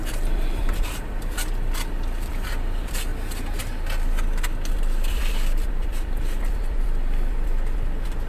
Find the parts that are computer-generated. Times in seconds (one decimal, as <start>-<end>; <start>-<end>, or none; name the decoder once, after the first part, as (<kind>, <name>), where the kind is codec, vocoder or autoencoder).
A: 0.0-3.1 (vocoder, BigVGAN v2); 4.7-8.3